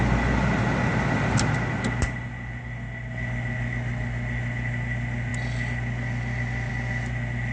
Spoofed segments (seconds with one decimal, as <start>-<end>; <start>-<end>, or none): none